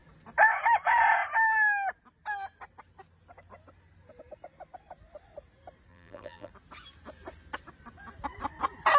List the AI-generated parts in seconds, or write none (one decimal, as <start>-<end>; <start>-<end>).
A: 5.9-6.5